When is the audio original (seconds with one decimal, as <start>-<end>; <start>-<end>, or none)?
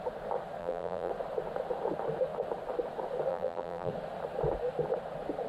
0.0-0.6; 1.1-3.3; 3.9-5.5